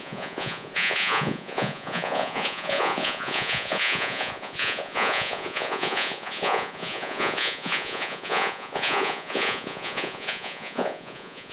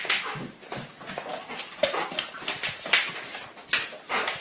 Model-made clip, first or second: first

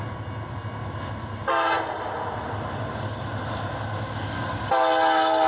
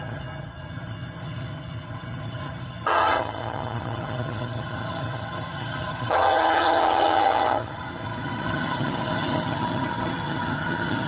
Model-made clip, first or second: second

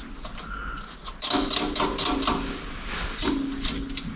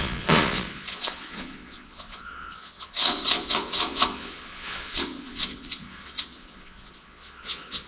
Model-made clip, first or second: second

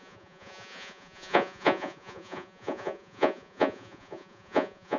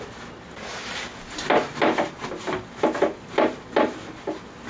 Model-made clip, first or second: first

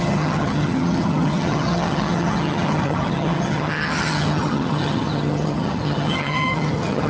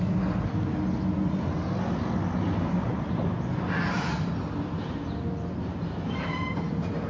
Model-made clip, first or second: first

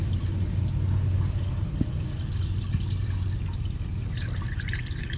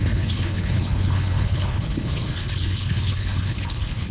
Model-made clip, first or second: second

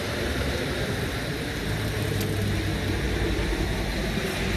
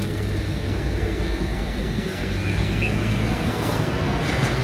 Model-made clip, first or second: second